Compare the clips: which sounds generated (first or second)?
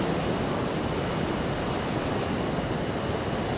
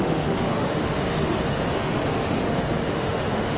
second